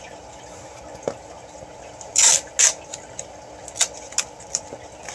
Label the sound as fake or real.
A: real